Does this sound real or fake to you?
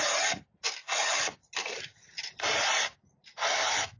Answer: real